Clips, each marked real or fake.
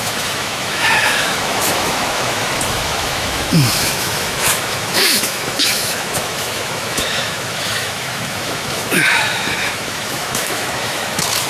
fake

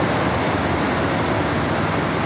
real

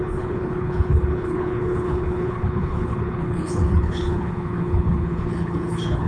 fake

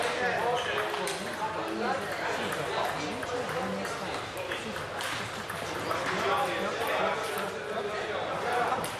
real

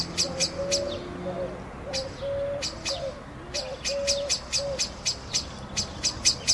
real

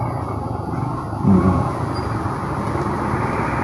real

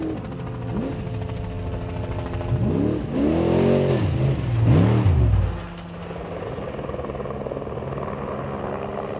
real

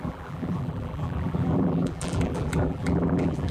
fake